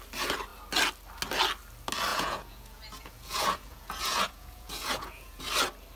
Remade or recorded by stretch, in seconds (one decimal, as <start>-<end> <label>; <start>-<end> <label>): 0.0-2.1 recorded; 2.1-5.4 remade; 5.4-6.0 recorded